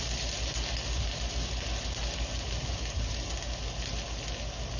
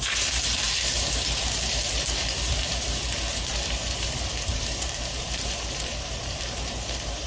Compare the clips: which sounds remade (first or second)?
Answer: second